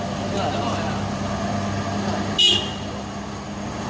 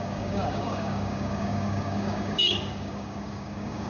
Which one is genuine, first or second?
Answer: first